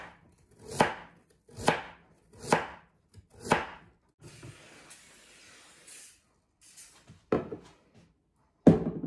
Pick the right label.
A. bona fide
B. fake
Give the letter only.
A